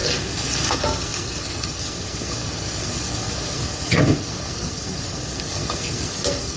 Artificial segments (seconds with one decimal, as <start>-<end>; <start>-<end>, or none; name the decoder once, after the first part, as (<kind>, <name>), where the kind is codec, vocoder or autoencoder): 0.0-6.6 (codec, SNAC)